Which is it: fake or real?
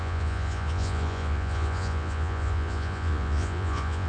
fake